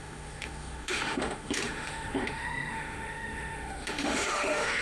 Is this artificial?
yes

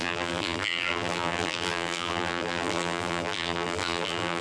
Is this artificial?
yes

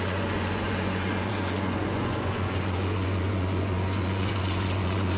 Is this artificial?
yes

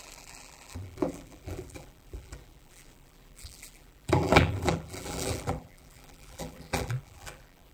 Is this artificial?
yes